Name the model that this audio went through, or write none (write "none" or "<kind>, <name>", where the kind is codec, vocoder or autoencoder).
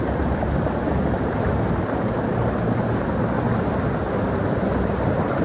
none